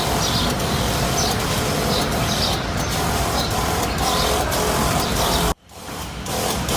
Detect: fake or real fake